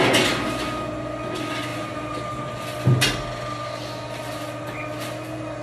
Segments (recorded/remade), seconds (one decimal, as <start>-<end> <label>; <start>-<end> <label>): 0.0-1.7 recorded; 1.7-2.5 remade; 2.5-5.6 recorded